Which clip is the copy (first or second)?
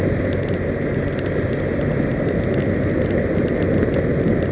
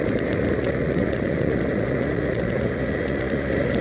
second